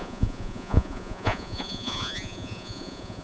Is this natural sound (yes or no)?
no